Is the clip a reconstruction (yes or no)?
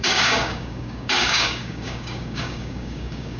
yes